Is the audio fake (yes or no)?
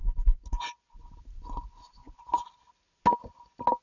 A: no